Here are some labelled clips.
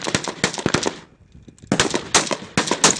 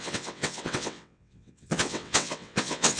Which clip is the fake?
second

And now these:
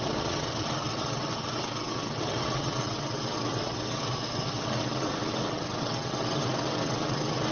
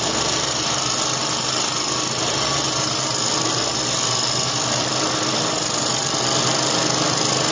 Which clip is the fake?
first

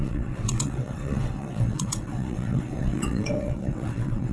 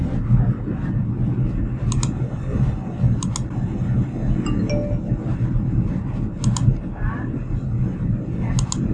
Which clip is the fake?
first